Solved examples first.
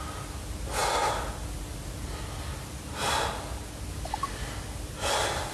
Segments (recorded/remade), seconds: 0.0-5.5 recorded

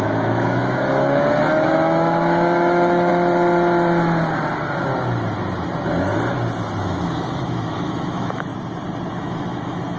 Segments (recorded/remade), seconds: 0.0-3.1 remade; 3.1-6.8 recorded; 6.8-8.5 remade; 8.5-9.1 recorded; 9.1-10.0 remade

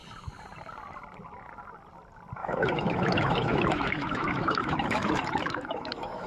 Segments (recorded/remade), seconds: 0.0-2.4 recorded; 2.4-6.3 remade

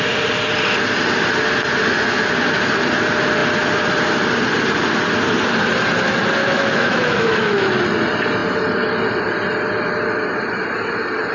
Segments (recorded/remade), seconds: 0.0-6.4 recorded; 6.4-7.7 remade; 7.7-11.3 recorded

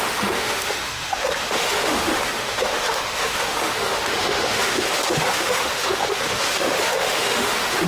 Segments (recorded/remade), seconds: 0.0-7.9 remade

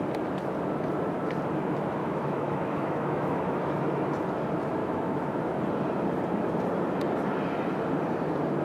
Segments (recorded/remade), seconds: 0.0-2.0 recorded; 2.0-3.8 remade; 3.8-4.8 recorded; 4.8-5.4 remade; 5.4-8.6 recorded

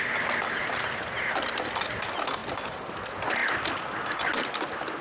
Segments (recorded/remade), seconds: 0.0-5.0 recorded

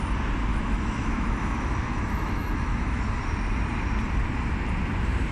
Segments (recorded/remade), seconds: 0.0-0.5 recorded; 0.5-3.0 remade; 3.0-5.3 recorded